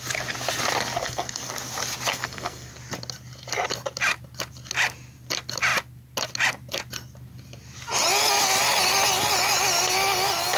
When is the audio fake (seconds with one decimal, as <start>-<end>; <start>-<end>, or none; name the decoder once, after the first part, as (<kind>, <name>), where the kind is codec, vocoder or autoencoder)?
1.0-1.5 (codec, SNAC); 2.1-2.7